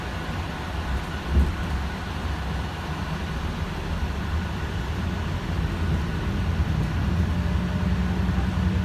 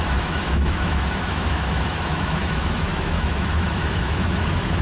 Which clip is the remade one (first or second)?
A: second